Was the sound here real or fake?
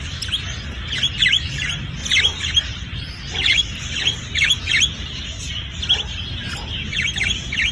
real